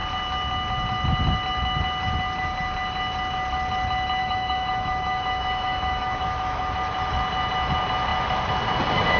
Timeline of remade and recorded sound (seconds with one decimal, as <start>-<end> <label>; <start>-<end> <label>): 0.0-4.2 recorded; 4.2-6.6 remade; 6.6-9.2 recorded